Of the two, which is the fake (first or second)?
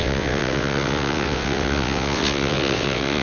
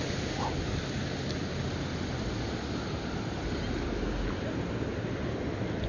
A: first